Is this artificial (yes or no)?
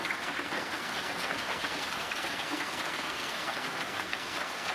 yes